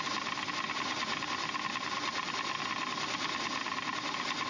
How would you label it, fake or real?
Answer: real